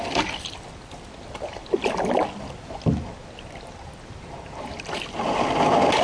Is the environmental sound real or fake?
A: real